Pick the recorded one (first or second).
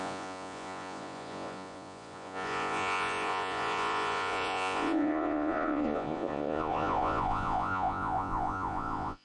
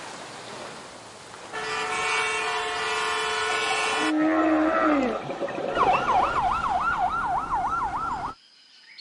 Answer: second